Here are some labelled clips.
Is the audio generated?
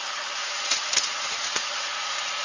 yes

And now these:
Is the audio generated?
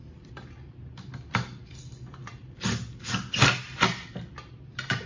no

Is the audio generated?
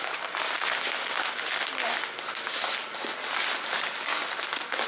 no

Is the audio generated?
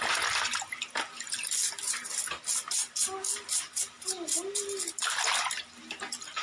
no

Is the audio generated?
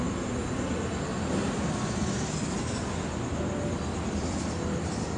no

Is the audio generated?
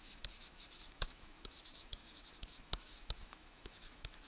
yes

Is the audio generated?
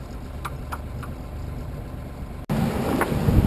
no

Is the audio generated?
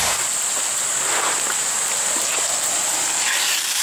no